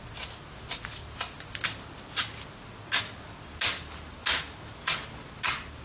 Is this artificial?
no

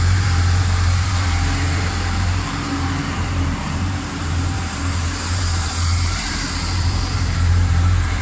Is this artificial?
yes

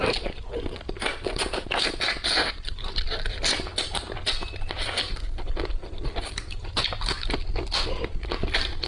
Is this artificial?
no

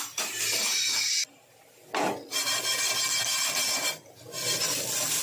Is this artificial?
no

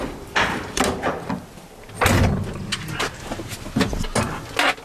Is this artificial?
no